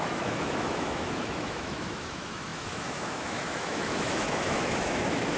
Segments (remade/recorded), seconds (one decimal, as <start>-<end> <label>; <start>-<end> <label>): 0.0-5.4 remade